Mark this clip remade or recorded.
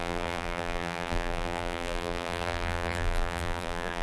remade